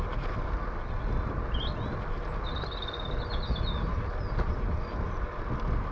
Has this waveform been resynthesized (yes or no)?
no